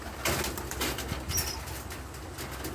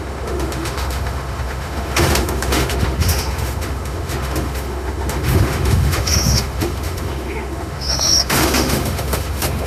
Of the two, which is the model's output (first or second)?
second